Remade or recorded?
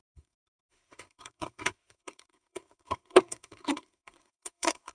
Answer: remade